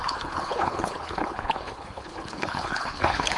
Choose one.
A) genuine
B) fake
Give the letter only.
B